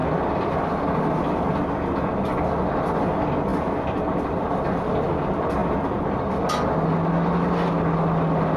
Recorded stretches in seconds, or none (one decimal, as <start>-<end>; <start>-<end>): 0.0-8.6